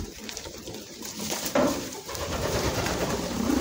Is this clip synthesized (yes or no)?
yes